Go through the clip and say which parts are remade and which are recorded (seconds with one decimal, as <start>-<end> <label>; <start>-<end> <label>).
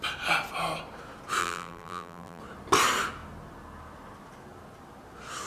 0.0-1.4 recorded; 1.4-2.4 remade; 2.4-5.5 recorded